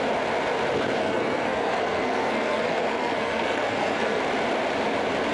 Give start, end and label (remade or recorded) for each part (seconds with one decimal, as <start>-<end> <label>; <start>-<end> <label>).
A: 0.0-1.0 recorded; 1.0-4.2 remade; 4.2-5.3 recorded